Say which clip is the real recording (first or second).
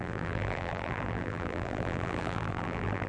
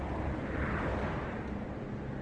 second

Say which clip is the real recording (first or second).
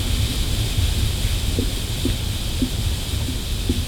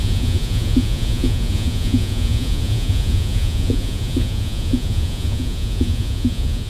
first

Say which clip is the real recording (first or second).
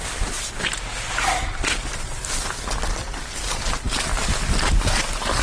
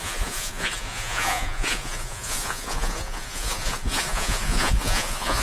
first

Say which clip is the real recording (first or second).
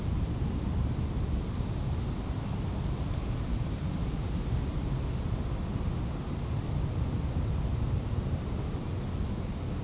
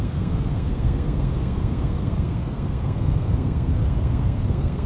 first